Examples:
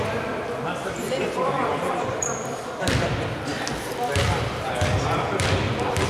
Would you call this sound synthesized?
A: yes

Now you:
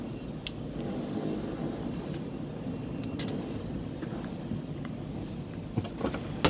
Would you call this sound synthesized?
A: no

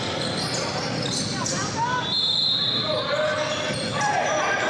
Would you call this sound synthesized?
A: no